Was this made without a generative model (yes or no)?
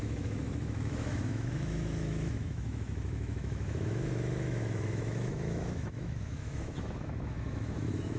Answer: no